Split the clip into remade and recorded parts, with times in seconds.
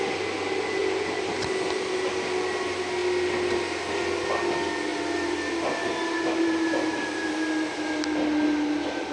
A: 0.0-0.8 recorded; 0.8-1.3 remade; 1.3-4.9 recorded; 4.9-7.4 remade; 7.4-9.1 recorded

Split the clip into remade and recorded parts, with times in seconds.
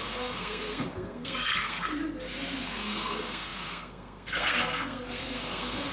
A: 0.0-1.9 remade; 1.9-2.6 recorded; 2.6-5.9 remade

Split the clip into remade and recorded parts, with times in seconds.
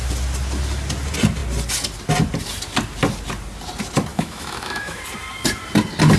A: 0.0-4.1 recorded; 4.1-5.0 remade; 5.0-6.2 recorded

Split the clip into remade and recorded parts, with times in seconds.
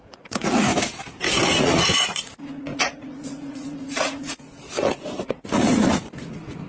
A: 0.0-0.7 remade; 0.7-1.6 recorded; 1.6-6.7 remade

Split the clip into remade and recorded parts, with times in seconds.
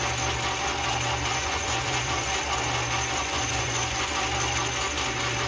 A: 0.0-1.3 recorded; 1.3-2.4 remade; 2.4-3.2 recorded; 3.2-4.1 remade; 4.1-5.5 recorded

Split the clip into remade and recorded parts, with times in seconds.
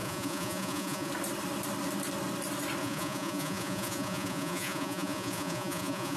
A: 0.0-1.1 remade; 1.1-2.8 recorded; 2.8-6.2 remade